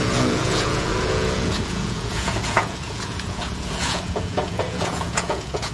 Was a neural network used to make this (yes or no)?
yes